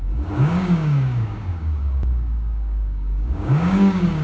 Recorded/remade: remade